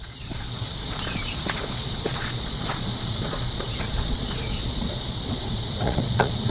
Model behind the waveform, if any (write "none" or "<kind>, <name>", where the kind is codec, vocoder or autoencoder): vocoder, Vocos